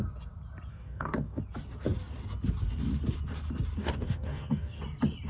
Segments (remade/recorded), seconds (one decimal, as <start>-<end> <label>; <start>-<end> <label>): 0.0-0.7 recorded; 0.7-1.4 remade; 1.4-3.8 recorded; 3.8-4.8 remade; 4.8-5.3 recorded